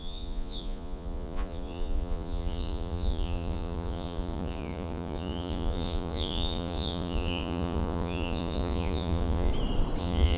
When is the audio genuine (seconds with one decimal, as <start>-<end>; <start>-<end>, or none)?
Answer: 9.5-10.0